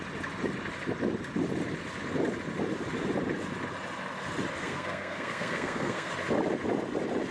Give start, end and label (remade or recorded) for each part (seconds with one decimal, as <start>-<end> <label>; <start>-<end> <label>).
0.0-4.6 recorded; 4.6-6.1 remade; 6.1-7.3 recorded